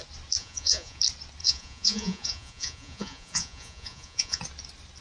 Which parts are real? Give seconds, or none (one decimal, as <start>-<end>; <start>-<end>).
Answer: 0.0-0.4; 1.0-1.4; 4.4-5.0